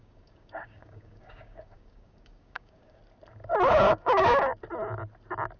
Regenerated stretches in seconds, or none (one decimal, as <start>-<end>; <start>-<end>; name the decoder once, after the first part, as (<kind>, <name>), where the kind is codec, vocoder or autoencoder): 0.0-3.0 (codec, DAC); 3.7-4.5